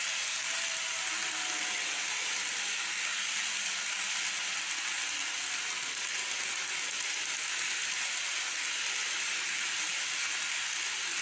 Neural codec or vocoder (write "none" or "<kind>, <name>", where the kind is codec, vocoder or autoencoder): none